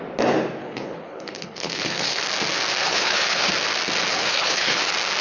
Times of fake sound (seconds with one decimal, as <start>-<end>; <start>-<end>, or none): 0.6-2.2; 2.8-3.5; 4.1-4.8